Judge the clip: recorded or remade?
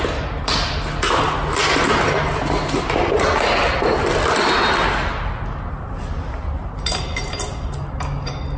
recorded